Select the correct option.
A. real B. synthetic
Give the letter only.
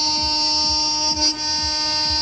A